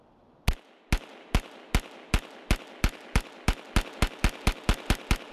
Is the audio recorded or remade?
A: recorded